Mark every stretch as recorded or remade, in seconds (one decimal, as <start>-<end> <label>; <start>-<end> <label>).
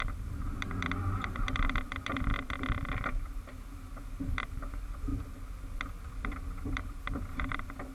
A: 0.0-5.1 remade; 5.1-6.0 recorded; 6.0-7.9 remade